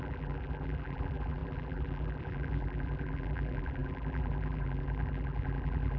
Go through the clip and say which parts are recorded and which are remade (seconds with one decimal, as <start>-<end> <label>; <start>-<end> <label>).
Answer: 0.0-6.0 remade